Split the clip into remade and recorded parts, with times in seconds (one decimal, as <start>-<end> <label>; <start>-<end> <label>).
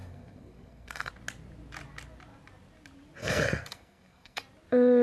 0.0-1.1 remade; 1.1-3.2 recorded; 3.2-4.4 remade; 4.4-5.0 recorded